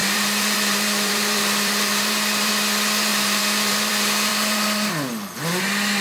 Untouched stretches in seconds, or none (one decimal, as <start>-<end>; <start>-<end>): 2.5-3.1; 3.9-4.3; 4.9-6.0